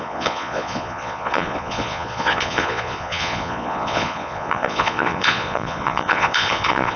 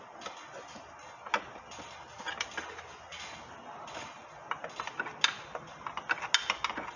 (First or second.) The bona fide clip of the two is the second